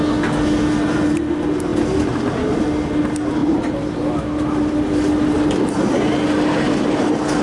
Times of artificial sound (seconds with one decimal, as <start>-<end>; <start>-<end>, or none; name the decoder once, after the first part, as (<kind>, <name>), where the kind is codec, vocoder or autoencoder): none